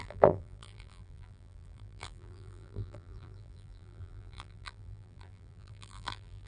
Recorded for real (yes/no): no